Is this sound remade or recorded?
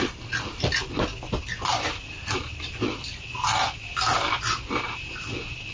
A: remade